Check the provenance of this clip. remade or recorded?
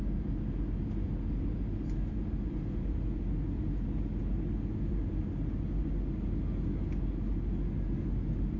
recorded